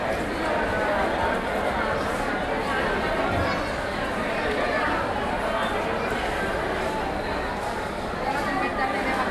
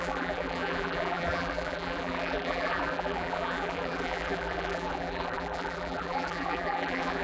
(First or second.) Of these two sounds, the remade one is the second